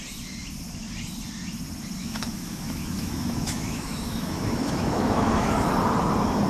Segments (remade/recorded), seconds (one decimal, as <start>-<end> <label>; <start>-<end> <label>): 0.0-2.0 recorded; 2.0-5.7 remade; 5.7-6.5 recorded